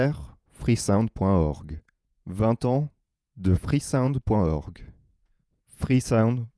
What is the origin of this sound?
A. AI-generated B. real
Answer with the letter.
A